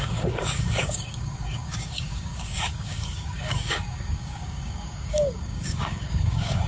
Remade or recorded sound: remade